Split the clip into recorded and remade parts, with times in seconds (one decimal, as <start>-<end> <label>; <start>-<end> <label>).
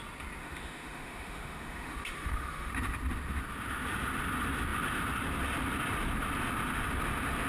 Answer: 0.0-0.4 recorded; 0.4-2.7 remade; 2.7-7.5 recorded